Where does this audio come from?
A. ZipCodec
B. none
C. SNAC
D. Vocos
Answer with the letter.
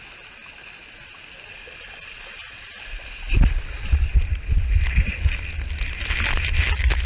B